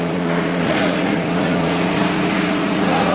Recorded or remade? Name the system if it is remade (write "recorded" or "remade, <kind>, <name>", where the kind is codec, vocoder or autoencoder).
remade, vocoder, Vocos